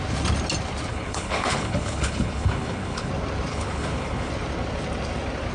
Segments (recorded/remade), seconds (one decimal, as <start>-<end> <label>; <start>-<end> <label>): 0.0-0.9 recorded; 0.9-3.1 remade; 3.1-3.5 recorded; 3.5-4.3 remade; 4.3-5.5 recorded